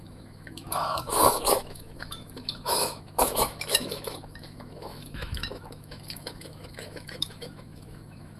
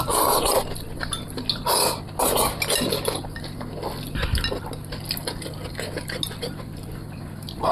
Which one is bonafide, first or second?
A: second